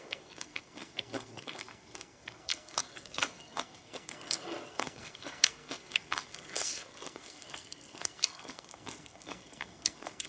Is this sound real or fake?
fake